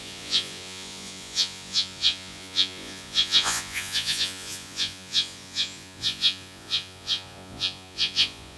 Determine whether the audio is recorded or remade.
remade